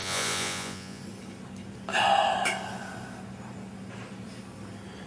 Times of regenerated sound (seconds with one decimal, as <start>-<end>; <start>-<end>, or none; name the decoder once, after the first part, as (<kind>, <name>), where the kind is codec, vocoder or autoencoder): 0.0-1.0 (vocoder, Vocos)

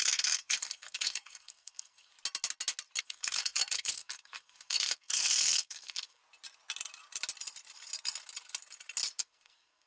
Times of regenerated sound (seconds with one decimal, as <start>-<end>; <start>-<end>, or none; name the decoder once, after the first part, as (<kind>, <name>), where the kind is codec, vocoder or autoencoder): 0.0-2.1 (codec, SNAC); 3.0-6.2; 9.2-9.9

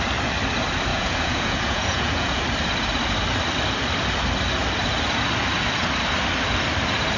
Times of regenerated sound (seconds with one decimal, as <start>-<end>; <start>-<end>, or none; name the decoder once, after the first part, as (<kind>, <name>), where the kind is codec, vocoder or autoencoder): 0.9-2.4 (vocoder, Vocos)

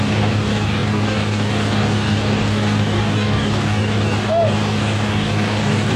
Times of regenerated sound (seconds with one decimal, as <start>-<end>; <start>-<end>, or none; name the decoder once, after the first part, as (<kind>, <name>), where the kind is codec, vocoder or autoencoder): 0.0-6.0 (codec, DAC)

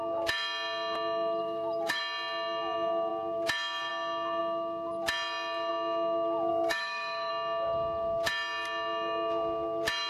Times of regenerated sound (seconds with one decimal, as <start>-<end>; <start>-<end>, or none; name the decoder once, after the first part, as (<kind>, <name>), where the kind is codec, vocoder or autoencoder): 1.4-2.0 (autoencoder, DAC-VAE); 6.5-7.3

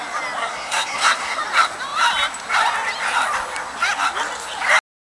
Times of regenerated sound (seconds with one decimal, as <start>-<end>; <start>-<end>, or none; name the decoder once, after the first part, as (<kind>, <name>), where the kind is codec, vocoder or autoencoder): 0.4-1.4 (codec, SNAC)

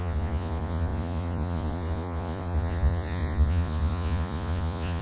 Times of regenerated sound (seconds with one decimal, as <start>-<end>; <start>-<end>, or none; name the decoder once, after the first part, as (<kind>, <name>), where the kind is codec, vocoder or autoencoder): 0.0-5.0 (vocoder, Vocos)